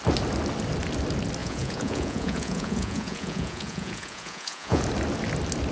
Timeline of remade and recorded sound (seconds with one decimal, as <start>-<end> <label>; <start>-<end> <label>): 0.0-1.4 recorded; 1.4-4.8 remade; 4.8-5.7 recorded